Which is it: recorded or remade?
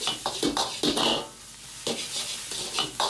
recorded